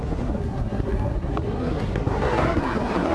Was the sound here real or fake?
fake